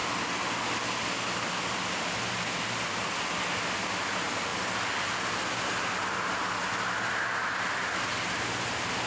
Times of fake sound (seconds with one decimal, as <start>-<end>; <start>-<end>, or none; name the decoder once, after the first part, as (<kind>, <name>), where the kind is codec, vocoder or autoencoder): none